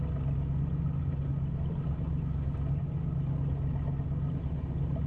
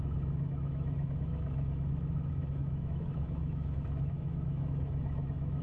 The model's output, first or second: second